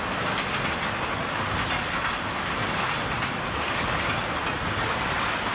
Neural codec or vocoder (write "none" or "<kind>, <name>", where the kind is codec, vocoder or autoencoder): none